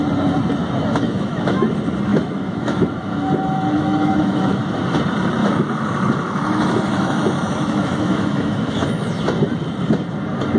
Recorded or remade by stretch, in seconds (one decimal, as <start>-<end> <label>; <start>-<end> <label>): 0.0-0.6 recorded; 0.6-1.7 remade; 1.7-2.1 recorded; 2.1-5.0 remade; 5.0-5.4 recorded; 5.4-9.2 remade; 9.2-10.6 recorded